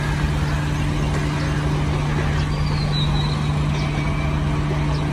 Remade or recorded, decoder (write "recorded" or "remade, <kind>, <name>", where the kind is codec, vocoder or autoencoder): recorded